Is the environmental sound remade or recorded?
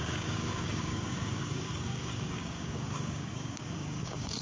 remade